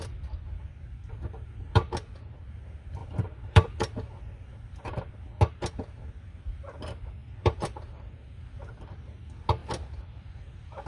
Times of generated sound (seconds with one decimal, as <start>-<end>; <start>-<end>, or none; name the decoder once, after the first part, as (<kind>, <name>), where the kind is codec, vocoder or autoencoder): 3.0-5.1 (vocoder, BigVGAN v2); 7.2-8.7